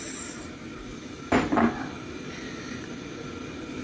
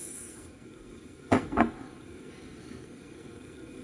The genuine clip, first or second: first